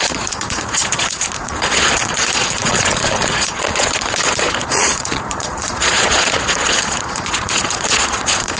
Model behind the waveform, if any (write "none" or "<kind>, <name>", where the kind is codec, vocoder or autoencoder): vocoder, Vocos